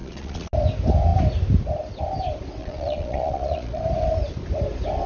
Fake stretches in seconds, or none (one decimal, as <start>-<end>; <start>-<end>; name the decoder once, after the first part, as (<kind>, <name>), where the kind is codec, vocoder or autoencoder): 0.0-0.5 (vocoder, Vocos); 2.6-3.8